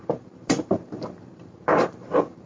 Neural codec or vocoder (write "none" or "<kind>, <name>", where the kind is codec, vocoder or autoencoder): vocoder, BigVGAN v2